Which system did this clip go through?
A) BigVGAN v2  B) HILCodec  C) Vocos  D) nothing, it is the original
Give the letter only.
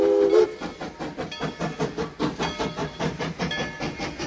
D